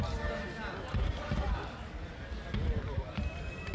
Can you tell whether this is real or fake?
real